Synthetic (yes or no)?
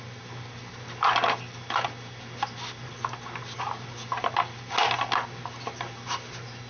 no